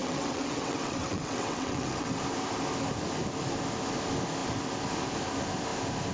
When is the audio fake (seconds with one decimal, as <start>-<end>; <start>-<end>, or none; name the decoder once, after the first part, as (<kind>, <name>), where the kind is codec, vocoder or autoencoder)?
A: 0.0-2.2 (vocoder, WaveNeXt)